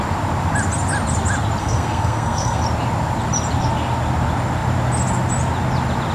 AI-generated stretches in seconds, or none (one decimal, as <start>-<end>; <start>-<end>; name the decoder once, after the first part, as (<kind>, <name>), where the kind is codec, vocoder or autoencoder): 1.6-2.6 (codec, SNAC)